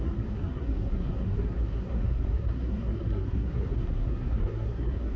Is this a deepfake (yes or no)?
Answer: yes